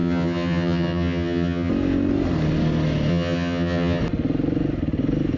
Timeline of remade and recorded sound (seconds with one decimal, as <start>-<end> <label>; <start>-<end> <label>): 0.0-1.7 remade; 1.7-3.1 recorded; 3.1-4.0 remade; 4.0-5.4 recorded